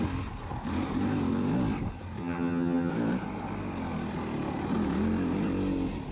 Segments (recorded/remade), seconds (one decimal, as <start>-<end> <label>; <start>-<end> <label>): 0.0-2.2 recorded; 2.2-2.9 remade; 2.9-6.1 recorded